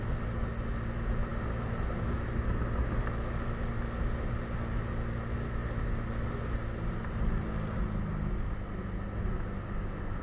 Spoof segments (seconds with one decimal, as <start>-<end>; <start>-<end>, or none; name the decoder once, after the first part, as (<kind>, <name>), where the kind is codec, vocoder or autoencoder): none